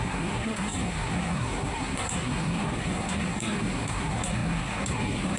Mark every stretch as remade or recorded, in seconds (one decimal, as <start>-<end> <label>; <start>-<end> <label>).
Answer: 0.0-5.4 remade